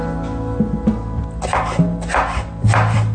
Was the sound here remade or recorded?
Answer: recorded